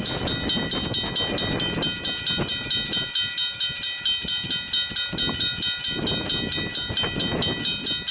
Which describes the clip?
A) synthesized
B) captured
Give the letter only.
B